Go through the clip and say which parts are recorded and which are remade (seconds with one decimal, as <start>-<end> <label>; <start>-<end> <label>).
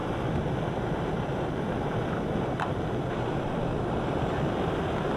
0.0-5.2 recorded